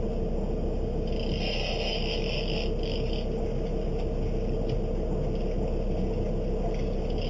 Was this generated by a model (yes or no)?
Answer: no